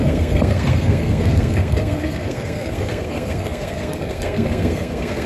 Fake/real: fake